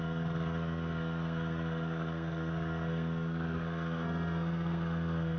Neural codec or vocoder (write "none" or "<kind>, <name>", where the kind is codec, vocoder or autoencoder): codec, SNAC